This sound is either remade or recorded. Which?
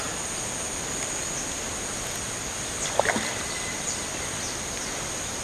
recorded